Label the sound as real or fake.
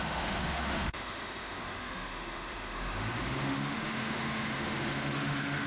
fake